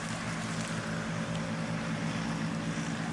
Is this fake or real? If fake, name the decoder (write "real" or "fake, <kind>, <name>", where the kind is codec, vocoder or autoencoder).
real